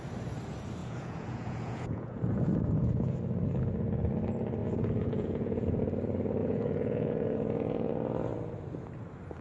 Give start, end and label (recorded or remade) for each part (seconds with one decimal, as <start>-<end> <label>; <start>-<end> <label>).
0.0-0.8 recorded; 0.8-3.2 remade; 3.2-4.6 recorded; 4.6-5.8 remade; 5.8-6.4 recorded; 6.4-7.9 remade; 7.9-9.4 recorded